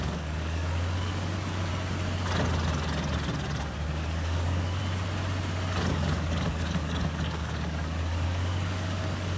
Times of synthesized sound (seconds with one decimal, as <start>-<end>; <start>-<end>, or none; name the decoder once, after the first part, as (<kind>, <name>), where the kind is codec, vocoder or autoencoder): 0.0-1.7 (codec, DAC); 3.9-4.8; 5.9-9.4